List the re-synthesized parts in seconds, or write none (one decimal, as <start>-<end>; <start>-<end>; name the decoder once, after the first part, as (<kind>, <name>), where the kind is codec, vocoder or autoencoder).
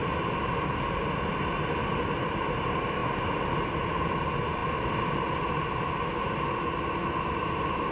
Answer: none